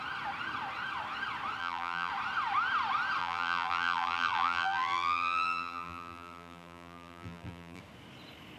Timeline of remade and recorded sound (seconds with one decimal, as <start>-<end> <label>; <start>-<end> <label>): 0.0-1.6 recorded; 1.6-2.1 remade; 2.1-3.2 recorded; 3.2-7.8 remade; 7.8-8.6 recorded